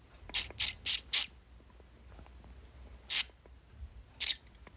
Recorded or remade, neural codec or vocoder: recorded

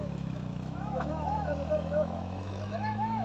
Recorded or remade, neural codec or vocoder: remade, autoencoder, DAC-VAE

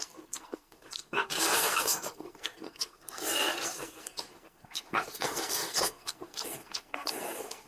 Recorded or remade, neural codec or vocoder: remade, codec, SNAC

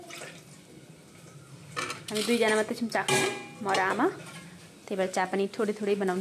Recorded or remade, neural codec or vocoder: recorded